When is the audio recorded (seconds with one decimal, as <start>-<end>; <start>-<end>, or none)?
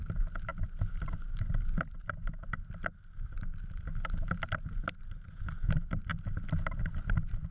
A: 0.0-0.5; 3.9-7.5